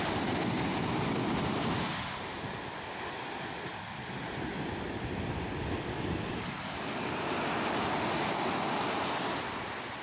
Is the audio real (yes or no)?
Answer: yes